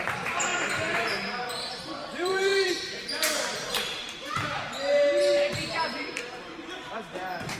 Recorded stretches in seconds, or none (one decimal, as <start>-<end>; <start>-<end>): none